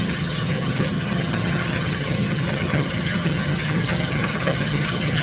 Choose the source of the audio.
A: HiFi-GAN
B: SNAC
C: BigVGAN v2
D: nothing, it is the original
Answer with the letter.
A